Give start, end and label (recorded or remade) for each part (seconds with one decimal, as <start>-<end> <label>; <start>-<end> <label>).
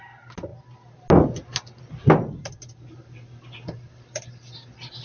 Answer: 0.0-5.0 recorded